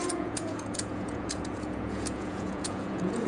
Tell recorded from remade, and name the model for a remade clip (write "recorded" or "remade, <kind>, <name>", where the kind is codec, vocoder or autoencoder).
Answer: remade, vocoder, Vocos